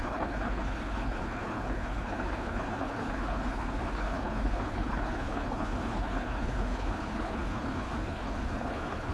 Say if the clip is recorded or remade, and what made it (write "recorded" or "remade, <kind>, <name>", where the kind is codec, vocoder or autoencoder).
remade, codec, HILCodec